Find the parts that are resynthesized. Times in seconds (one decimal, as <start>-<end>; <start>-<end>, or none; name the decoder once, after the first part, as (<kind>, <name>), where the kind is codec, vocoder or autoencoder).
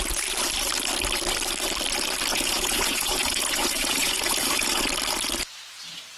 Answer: 2.3-4.8 (vocoder, Vocos)